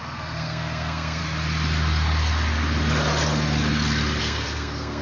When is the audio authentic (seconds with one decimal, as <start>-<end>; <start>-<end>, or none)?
1.2-4.2